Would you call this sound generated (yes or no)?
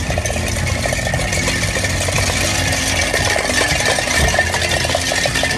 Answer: no